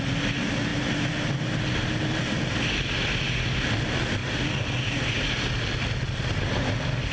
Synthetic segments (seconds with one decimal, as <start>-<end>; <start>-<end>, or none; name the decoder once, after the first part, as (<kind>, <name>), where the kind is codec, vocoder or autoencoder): none